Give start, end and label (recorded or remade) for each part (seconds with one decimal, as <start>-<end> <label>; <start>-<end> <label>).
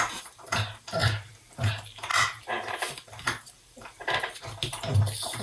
0.0-1.0 recorded; 1.0-1.7 remade; 1.7-2.1 recorded; 2.1-4.4 remade; 4.4-5.4 recorded